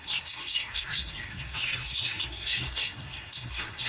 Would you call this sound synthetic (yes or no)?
yes